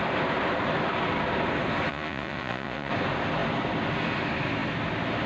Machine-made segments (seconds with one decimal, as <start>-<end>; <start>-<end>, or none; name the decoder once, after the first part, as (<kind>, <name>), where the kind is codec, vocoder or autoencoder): 1.9-2.9 (vocoder, Vocos)